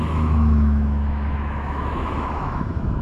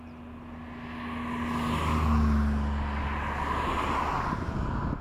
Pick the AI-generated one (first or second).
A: first